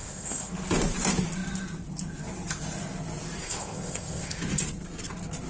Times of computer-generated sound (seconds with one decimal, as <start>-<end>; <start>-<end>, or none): 0.0-0.5; 3.4-4.4